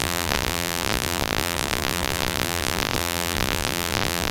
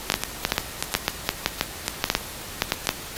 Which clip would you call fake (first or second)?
first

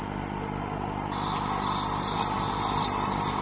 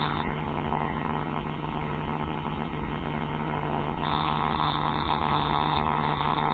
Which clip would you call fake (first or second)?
second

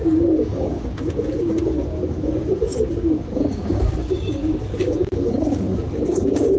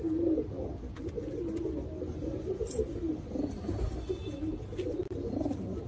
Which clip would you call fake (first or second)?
first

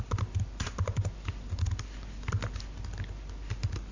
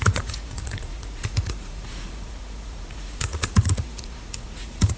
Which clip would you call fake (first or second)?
second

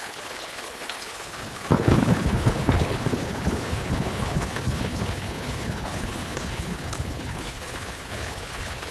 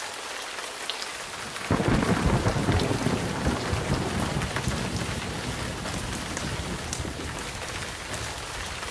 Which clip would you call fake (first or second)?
first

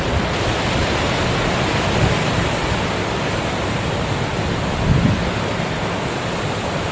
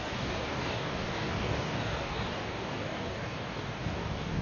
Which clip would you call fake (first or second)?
second